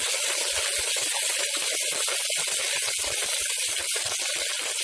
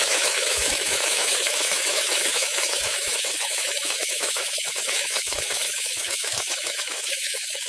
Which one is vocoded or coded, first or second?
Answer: second